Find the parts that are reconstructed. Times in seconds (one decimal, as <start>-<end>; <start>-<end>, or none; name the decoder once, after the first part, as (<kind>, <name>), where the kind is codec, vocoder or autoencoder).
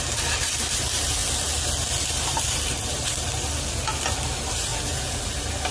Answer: 4.7-5.2 (vocoder, Vocos)